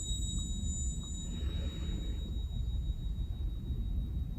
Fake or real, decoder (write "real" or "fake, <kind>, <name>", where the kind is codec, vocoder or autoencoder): real